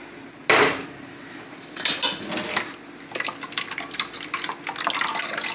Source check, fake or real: real